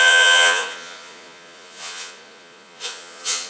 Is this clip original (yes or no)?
no